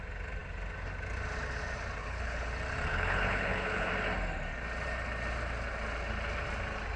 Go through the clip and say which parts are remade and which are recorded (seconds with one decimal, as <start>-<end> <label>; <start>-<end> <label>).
0.0-2.0 recorded; 2.0-2.5 remade; 2.5-2.9 recorded; 2.9-3.9 remade; 3.9-7.0 recorded